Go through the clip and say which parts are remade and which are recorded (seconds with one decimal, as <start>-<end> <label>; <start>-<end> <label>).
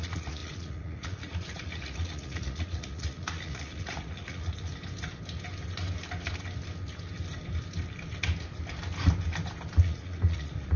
0.0-4.7 remade; 4.7-9.8 recorded; 9.8-10.8 remade